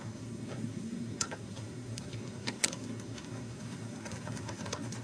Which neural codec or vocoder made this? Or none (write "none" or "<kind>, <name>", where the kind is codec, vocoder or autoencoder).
codec, SNAC